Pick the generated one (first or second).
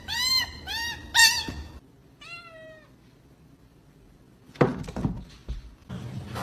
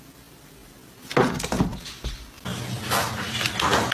first